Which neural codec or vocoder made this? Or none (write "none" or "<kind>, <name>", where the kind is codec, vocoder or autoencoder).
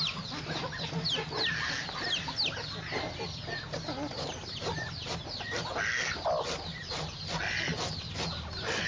none